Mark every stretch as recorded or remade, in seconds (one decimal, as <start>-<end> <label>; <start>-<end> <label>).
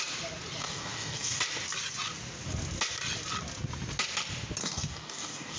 0.0-0.6 recorded; 0.6-1.4 remade; 1.4-4.6 recorded; 4.6-5.6 remade